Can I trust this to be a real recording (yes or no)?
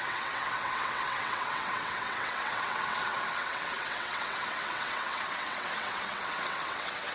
no